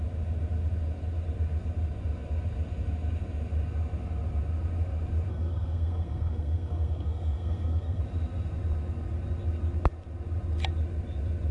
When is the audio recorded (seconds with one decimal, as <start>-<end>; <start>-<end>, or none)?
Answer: 0.0-5.3; 8.0-11.5